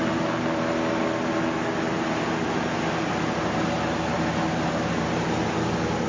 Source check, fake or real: real